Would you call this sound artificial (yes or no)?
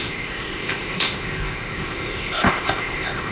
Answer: yes